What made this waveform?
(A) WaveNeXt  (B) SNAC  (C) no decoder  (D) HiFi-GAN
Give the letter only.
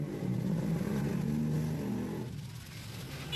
C